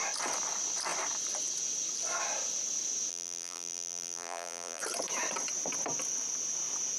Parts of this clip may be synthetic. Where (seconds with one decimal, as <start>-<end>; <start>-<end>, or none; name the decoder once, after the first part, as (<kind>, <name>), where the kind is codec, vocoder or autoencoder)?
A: 3.1-4.8 (vocoder, BigVGAN v2)